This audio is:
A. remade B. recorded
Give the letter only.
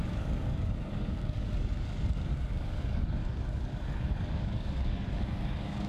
A